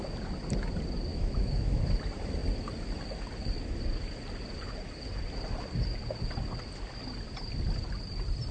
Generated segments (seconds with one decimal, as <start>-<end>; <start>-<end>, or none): 1.1-1.8